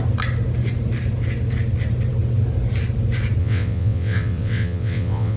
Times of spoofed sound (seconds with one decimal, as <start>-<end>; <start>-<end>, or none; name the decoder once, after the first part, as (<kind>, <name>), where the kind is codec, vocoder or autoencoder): 3.4-5.4 (vocoder, WaveNeXt)